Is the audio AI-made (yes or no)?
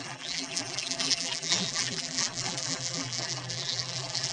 yes